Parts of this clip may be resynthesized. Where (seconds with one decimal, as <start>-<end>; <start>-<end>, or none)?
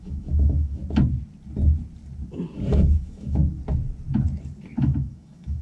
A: 0.0-0.8; 2.7-3.4; 4.8-5.6